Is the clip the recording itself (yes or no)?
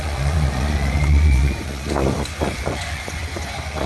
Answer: no